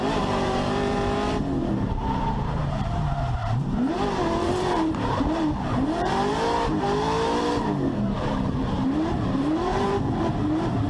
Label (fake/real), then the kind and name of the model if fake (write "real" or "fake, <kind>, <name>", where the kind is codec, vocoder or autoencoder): fake, vocoder, BigVGAN v2